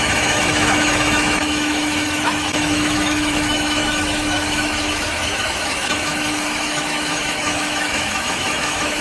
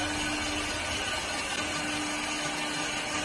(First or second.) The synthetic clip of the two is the first